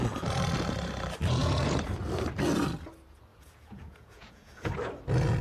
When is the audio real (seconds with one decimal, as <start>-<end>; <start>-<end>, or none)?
0.0-1.4; 2.0-3.3; 4.7-5.4